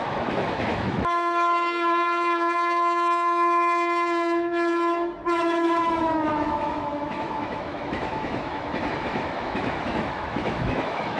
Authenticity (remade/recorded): remade